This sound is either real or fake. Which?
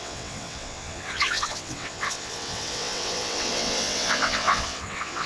fake